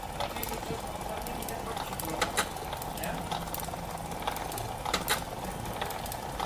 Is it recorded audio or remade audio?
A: recorded